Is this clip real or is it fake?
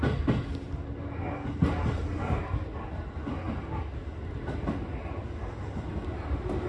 real